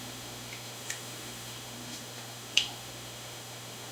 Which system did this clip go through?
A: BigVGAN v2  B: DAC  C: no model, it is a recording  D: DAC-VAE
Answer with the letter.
D